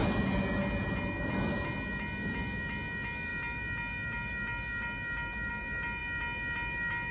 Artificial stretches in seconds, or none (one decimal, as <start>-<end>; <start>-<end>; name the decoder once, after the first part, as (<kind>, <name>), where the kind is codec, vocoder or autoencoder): none